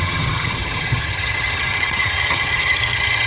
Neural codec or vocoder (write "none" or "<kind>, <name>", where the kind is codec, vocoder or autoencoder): vocoder, HiFi-GAN